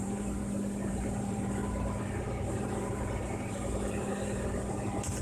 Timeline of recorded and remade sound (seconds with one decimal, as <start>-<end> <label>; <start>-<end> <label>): 0.0-0.4 remade; 0.4-0.9 recorded; 0.9-1.6 remade; 1.6-2.4 recorded; 2.4-5.2 remade